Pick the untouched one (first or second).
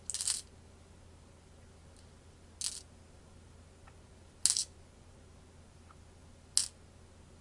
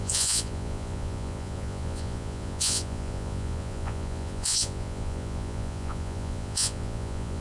first